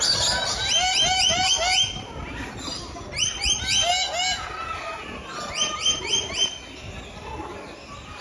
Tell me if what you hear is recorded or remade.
recorded